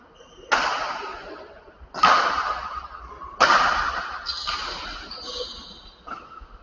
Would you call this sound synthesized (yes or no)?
no